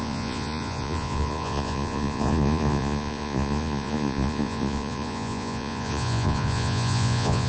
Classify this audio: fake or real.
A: fake